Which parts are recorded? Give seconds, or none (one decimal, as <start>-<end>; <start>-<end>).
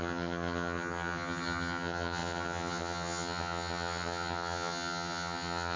none